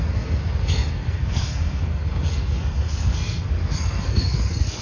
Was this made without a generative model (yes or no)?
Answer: no